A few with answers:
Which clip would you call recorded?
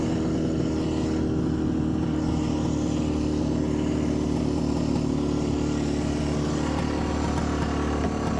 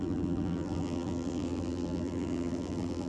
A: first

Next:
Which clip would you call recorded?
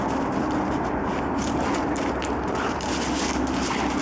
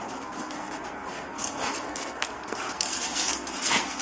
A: first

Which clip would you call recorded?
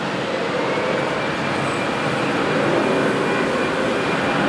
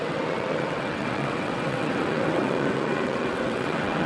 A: first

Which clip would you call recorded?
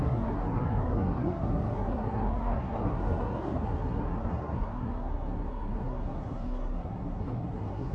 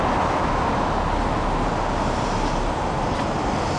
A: second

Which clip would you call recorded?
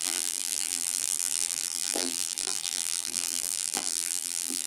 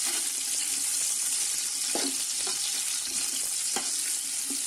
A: second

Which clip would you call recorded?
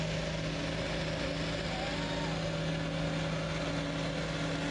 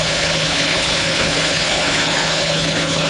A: first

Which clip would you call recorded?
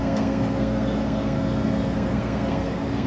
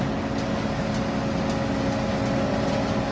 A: second